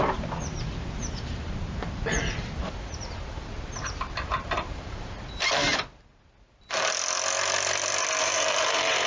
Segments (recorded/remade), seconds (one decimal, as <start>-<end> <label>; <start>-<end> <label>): 0.0-5.6 remade; 5.6-8.2 recorded; 8.2-9.1 remade